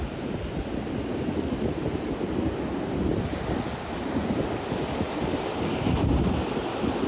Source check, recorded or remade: recorded